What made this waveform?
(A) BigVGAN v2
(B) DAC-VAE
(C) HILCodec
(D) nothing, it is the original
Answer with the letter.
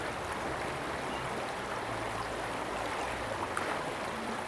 D